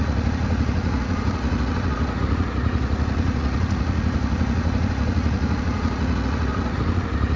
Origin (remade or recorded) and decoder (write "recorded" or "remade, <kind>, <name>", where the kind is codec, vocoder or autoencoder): remade, vocoder, Vocos